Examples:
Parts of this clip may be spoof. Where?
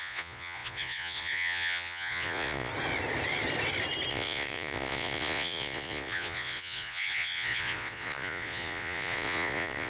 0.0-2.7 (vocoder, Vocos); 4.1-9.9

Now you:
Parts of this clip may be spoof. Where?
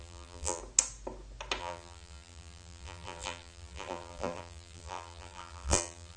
0.0-0.6 (vocoder, BigVGAN v2); 1.6-6.2